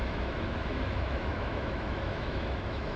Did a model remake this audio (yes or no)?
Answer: yes